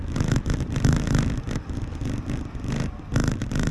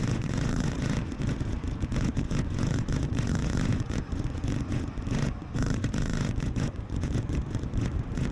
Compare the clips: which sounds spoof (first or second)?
second